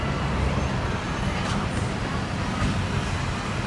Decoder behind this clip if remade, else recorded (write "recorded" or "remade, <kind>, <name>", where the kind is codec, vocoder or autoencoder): recorded